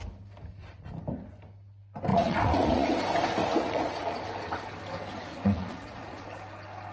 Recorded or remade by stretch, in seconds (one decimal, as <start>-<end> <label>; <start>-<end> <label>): 0.0-2.1 recorded; 2.1-2.9 remade; 2.9-3.4 recorded; 3.4-4.2 remade; 4.2-5.3 recorded; 5.3-6.2 remade; 6.2-6.9 recorded